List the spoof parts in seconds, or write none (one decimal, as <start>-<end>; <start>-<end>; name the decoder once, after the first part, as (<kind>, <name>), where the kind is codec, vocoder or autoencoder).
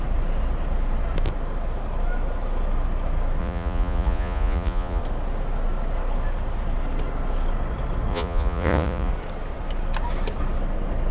3.4-5.0 (vocoder, Vocos); 8.1-9.1